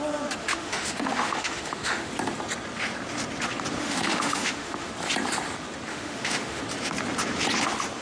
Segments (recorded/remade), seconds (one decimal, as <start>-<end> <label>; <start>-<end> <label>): 0.0-0.4 recorded; 0.4-2.1 remade; 2.1-3.8 recorded; 3.8-4.9 remade; 4.9-5.9 recorded; 5.9-6.6 remade; 6.6-8.0 recorded